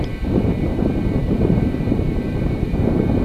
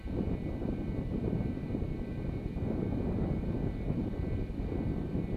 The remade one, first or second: first